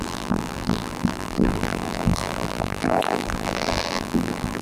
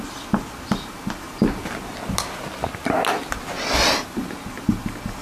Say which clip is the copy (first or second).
first